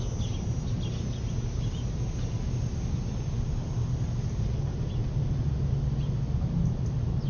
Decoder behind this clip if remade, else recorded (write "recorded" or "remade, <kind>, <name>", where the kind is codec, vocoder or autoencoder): recorded